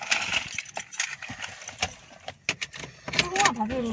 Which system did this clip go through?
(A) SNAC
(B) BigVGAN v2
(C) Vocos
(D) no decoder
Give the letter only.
D